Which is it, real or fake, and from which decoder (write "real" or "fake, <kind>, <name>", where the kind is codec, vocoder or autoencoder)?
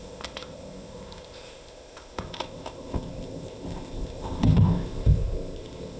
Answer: fake, codec, ZipCodec